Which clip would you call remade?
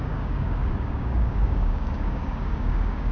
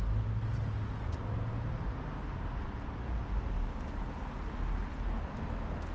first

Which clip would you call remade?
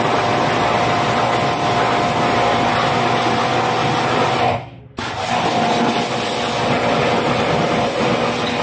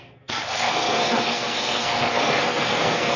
second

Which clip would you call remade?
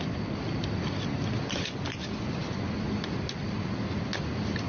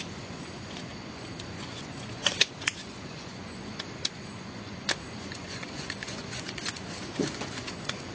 second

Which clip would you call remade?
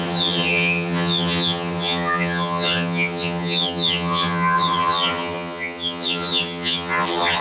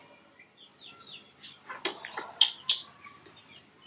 first